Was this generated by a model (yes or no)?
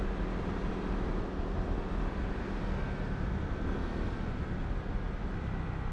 no